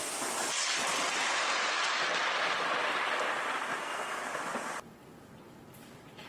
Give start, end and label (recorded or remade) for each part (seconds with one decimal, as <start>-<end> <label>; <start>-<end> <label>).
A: 0.0-3.8 recorded; 3.8-4.2 remade; 4.2-6.3 recorded